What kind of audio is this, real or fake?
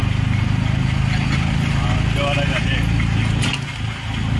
real